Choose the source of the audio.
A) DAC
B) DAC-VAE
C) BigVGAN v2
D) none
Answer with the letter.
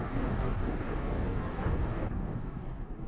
A